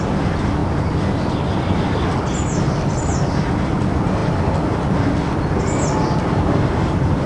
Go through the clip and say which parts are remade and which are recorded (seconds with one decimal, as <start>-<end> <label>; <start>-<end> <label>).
0.0-7.3 recorded